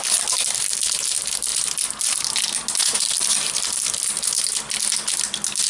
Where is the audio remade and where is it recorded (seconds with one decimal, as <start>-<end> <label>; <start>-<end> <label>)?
0.0-5.7 recorded